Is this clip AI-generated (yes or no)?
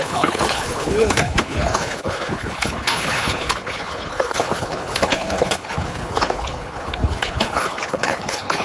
yes